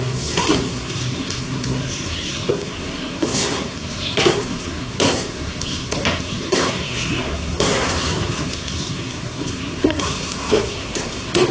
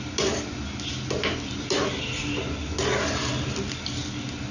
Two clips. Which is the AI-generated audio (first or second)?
first